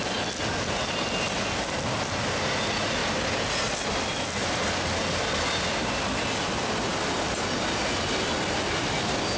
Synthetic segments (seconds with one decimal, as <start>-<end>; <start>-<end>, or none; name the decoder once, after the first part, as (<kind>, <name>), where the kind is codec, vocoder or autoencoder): none